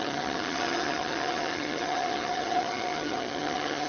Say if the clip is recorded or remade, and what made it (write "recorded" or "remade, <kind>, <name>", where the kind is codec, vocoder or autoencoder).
remade, vocoder, HiFi-GAN